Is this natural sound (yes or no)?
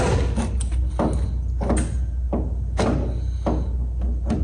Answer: yes